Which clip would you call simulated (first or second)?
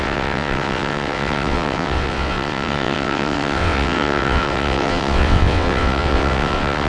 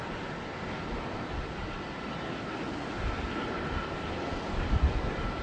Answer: first